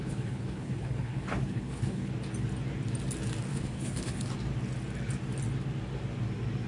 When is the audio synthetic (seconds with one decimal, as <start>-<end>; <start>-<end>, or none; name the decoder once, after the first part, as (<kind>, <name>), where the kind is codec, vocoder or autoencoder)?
0.0-2.1 (codec, HILCodec); 3.5-4.3

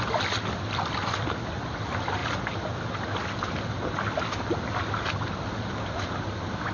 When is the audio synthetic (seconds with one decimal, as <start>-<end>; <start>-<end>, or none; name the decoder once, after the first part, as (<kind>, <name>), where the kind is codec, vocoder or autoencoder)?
none

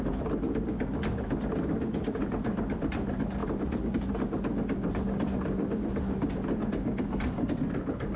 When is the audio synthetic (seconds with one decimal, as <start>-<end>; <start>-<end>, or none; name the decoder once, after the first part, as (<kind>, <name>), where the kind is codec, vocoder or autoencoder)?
none